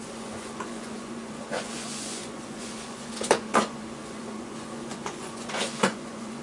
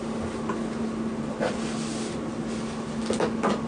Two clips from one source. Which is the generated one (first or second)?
first